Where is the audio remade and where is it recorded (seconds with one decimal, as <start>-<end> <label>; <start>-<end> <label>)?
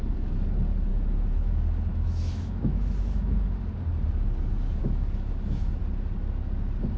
0.0-1.9 recorded; 1.9-3.6 remade; 3.6-4.8 recorded; 4.8-5.8 remade; 5.8-7.0 recorded